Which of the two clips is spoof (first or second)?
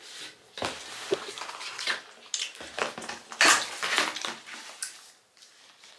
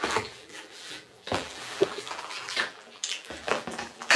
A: second